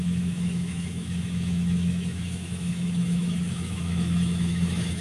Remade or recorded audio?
remade